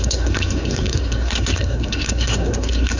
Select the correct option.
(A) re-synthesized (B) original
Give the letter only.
A